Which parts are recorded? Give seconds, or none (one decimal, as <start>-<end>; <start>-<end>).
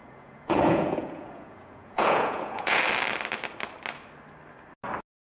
2.8-5.2